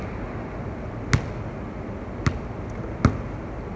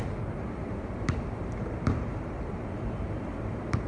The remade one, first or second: second